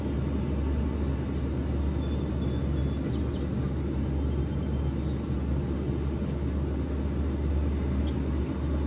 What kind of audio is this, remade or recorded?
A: recorded